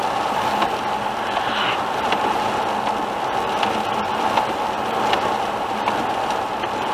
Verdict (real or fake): real